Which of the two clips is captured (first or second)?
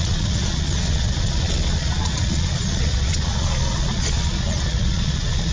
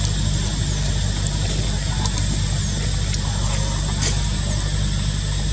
second